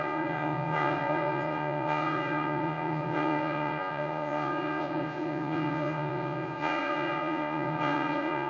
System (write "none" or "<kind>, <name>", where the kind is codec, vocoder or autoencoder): vocoder, Vocos